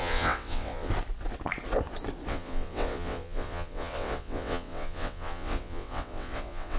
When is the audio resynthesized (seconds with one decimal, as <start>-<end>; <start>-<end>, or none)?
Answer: 0.0-0.9; 2.3-6.8